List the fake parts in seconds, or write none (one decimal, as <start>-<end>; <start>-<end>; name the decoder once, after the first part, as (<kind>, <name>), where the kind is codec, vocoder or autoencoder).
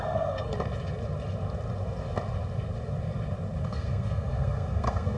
0.0-0.5 (codec, SNAC); 3.6-5.2